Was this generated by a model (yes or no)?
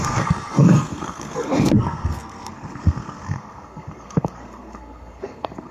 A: yes